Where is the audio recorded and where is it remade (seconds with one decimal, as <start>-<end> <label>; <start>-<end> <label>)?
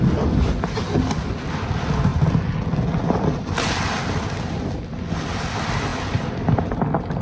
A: 0.0-7.2 recorded